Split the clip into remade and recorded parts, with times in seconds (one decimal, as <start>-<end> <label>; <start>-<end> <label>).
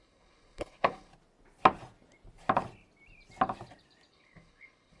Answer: 0.0-1.1 remade; 1.1-4.1 recorded; 4.1-5.0 remade